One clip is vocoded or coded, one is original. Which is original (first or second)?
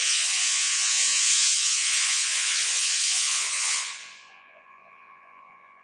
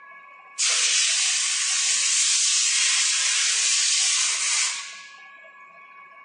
second